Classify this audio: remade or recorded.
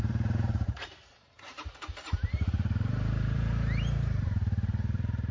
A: remade